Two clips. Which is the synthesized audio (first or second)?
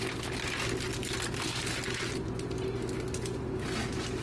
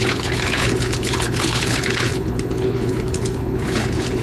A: second